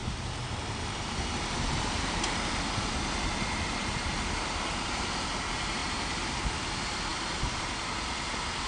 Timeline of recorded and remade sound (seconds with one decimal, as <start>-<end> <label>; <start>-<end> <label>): 0.0-5.1 remade; 5.1-8.7 recorded

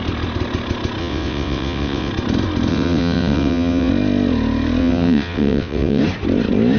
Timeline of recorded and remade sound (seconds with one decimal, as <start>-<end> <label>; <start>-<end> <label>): 0.0-1.0 recorded; 1.0-2.1 remade; 2.1-2.7 recorded; 2.7-3.9 remade; 3.9-4.8 recorded; 4.8-6.0 remade; 6.0-6.8 recorded

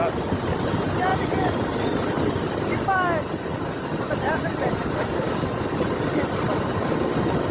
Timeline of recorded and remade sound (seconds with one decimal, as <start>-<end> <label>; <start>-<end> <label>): 0.0-7.5 recorded

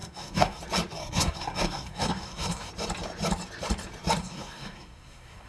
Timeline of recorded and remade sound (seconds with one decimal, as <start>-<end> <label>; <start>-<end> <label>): 0.0-0.6 remade; 0.6-1.0 recorded; 1.0-2.7 remade; 2.7-4.2 recorded; 4.2-5.5 remade

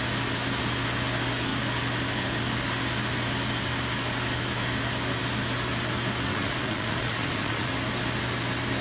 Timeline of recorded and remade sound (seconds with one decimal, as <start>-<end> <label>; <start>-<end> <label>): 0.0-6.3 recorded; 6.3-7.7 remade; 7.7-8.8 recorded

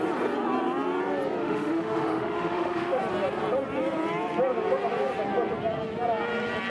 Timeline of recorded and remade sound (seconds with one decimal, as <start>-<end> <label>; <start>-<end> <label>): 0.0-1.4 recorded; 1.4-3.0 remade; 3.0-6.7 recorded

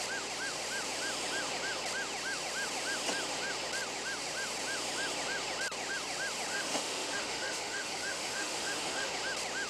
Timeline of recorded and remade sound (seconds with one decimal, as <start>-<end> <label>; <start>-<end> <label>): 0.0-6.5 recorded; 6.5-9.1 remade; 9.1-9.7 recorded